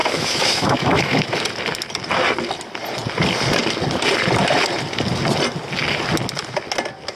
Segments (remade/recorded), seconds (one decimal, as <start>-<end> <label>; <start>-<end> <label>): 0.0-1.2 remade; 1.2-7.2 recorded